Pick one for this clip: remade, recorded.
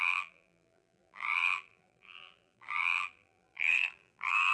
remade